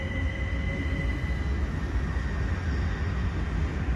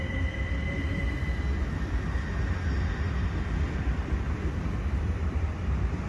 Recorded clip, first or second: first